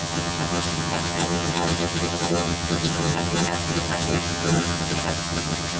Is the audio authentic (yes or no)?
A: no